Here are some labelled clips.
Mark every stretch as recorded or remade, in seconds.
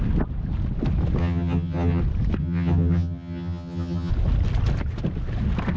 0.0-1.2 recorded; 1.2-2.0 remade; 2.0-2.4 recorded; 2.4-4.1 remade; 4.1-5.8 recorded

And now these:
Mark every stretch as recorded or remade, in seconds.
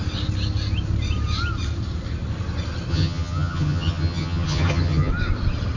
0.0-2.9 recorded; 2.9-5.1 remade; 5.1-5.8 recorded